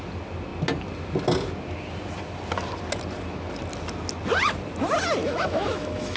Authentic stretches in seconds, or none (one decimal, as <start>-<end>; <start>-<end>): 0.0-5.2